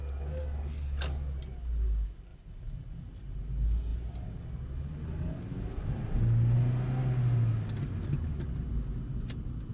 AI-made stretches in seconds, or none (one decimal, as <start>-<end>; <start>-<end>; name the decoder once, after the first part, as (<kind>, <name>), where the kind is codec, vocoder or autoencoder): none